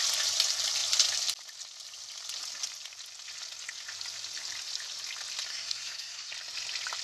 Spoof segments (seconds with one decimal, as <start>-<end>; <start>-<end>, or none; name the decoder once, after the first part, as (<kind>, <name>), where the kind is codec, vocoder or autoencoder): 5.5-6.3 (codec, SNAC)